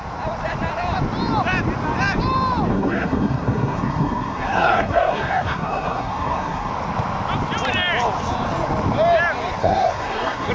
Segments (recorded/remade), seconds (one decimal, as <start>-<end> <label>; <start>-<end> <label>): 0.0-2.7 recorded; 2.7-6.7 remade; 6.7-9.6 recorded; 9.6-10.5 remade

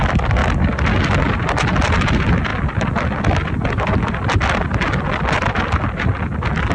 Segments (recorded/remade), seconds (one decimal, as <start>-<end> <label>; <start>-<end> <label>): 0.0-6.7 recorded

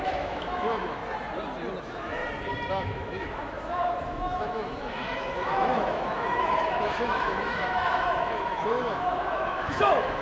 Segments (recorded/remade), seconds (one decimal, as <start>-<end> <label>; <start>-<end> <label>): 0.0-1.0 remade; 1.0-1.8 recorded; 1.8-2.2 remade; 2.2-2.7 recorded; 2.7-10.2 remade

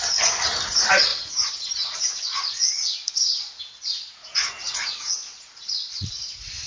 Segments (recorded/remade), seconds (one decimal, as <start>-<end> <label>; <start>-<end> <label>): 0.0-1.1 recorded; 1.1-3.6 remade; 3.6-4.2 recorded; 4.2-6.7 remade

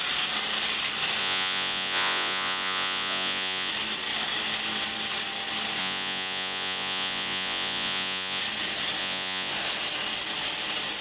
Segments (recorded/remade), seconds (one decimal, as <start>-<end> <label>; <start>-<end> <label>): 0.0-1.2 recorded; 1.2-3.7 remade; 3.7-5.8 recorded; 5.8-8.4 remade; 8.4-9.0 recorded; 9.0-9.5 remade; 9.5-11.0 recorded